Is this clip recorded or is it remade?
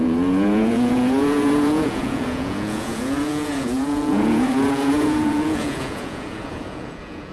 remade